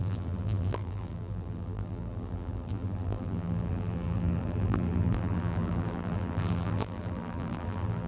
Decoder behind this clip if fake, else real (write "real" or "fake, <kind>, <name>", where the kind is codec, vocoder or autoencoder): fake, vocoder, BigVGAN v2